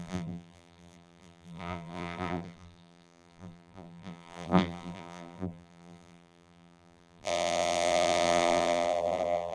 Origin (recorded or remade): remade